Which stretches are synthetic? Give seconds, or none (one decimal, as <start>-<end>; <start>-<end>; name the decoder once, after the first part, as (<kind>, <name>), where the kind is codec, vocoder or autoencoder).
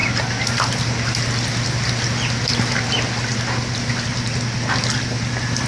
none